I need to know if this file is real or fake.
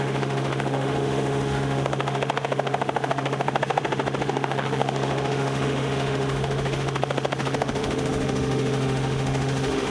fake